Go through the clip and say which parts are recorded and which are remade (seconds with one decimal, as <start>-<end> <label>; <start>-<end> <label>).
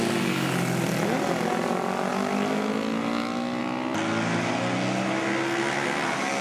0.0-6.4 recorded